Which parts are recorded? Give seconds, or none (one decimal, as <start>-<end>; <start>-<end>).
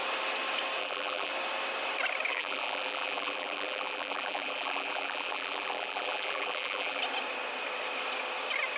0.0-0.8; 1.3-2.3; 7.0-8.8